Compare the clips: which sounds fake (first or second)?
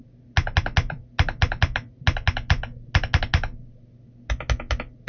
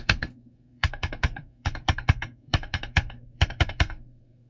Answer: second